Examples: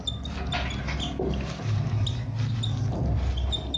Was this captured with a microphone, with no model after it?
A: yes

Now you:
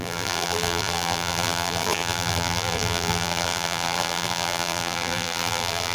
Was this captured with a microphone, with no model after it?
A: no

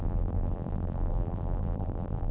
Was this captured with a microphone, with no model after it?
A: no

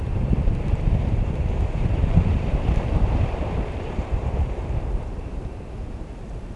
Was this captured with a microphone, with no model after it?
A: no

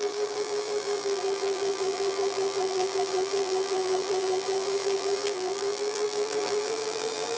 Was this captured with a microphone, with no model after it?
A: no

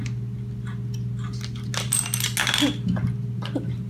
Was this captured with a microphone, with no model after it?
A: yes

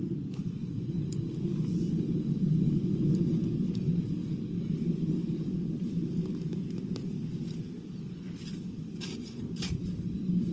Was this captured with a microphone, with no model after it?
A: no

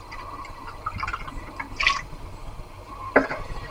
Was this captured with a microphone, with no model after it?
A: yes